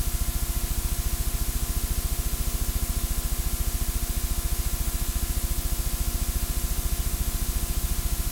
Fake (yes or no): no